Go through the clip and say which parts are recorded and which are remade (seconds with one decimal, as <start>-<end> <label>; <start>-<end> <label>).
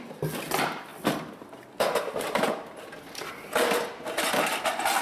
0.0-5.0 recorded